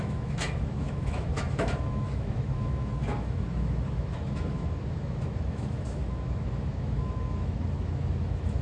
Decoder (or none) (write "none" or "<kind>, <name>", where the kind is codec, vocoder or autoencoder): autoencoder, DAC-VAE